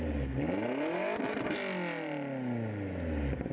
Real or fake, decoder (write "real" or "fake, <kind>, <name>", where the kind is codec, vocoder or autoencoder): real